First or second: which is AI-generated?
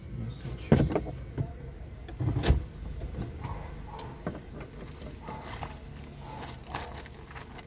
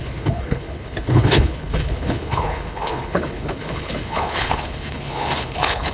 second